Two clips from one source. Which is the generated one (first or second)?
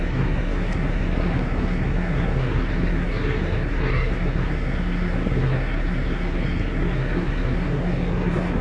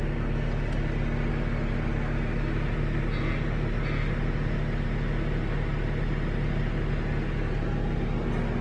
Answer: first